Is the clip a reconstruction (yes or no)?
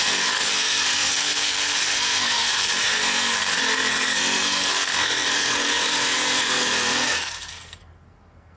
yes